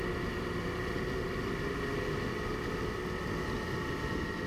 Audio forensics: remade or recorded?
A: recorded